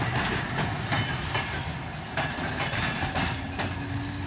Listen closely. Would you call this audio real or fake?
real